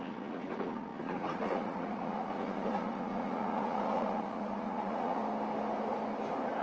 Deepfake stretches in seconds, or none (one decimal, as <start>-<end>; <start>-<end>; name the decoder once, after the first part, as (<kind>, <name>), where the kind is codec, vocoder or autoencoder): 0.0-5.2 (vocoder, Vocos)